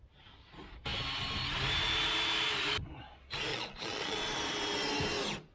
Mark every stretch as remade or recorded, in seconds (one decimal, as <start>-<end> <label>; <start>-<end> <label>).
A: 0.0-3.5 recorded; 3.5-4.2 remade; 4.2-5.5 recorded